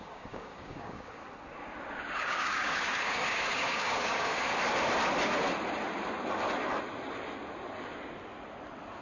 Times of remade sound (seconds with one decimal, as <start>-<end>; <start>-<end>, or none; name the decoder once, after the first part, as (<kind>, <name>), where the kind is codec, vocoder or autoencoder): 0.0-1.2 (codec, DAC); 2.0-4.5